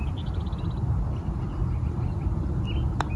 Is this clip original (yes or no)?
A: yes